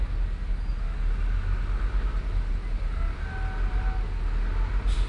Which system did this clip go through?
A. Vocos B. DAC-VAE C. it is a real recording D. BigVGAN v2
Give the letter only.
C